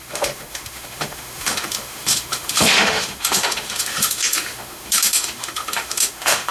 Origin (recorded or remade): remade